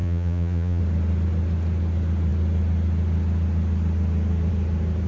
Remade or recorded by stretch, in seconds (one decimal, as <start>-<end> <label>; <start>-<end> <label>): 0.0-0.8 remade; 0.8-5.1 recorded